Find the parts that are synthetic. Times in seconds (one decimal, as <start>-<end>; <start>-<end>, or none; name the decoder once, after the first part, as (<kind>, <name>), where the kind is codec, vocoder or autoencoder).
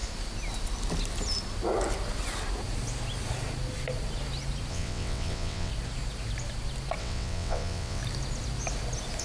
4.7-5.7 (vocoder, WaveNeXt); 7.0-8.0